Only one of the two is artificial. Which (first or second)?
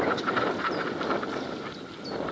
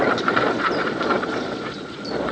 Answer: second